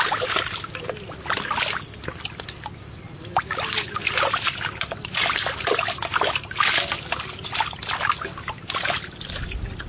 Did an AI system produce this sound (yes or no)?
no